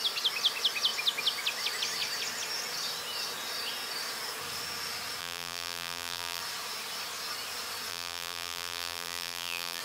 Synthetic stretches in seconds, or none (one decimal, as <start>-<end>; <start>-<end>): 5.2-6.4; 7.9-9.8